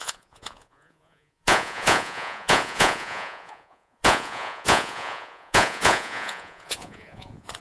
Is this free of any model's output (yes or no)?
no